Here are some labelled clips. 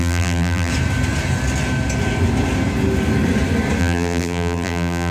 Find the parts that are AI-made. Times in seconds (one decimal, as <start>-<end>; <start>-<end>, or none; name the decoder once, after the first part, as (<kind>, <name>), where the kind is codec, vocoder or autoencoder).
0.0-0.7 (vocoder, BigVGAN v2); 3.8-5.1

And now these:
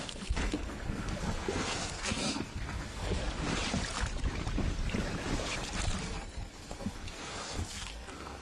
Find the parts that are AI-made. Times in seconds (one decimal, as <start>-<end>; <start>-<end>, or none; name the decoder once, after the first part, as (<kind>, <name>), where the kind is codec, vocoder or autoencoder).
0.0-3.2 (codec, SNAC); 6.0-8.4

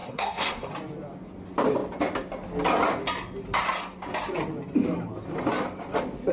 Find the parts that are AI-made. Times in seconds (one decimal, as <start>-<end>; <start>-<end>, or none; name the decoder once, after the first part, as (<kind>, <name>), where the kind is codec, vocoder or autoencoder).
0.0-0.7 (codec, SNAC)

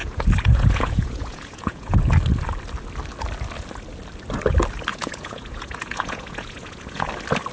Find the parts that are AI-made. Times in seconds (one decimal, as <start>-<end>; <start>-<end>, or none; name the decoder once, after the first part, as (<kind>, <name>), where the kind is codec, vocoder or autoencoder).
0.0-2.0 (vocoder, Vocos); 4.9-7.1

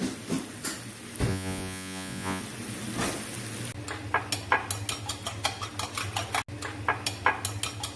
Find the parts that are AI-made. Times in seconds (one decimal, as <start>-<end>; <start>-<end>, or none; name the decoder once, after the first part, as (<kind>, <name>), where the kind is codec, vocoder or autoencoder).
1.3-2.4 (vocoder, Vocos)

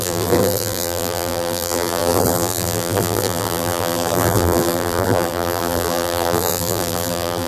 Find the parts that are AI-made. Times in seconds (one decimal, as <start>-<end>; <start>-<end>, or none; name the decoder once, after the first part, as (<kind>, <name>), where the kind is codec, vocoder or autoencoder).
0.0-7.5 (vocoder, BigVGAN v2)